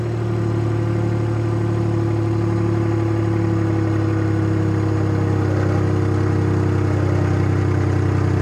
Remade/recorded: recorded